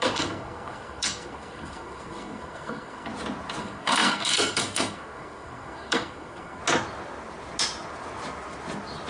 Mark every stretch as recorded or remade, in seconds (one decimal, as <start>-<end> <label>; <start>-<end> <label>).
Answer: 0.0-3.1 remade; 3.1-3.6 recorded; 3.6-6.6 remade; 6.6-9.1 recorded